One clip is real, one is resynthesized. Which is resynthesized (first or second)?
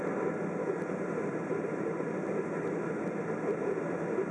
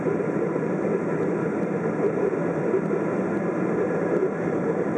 second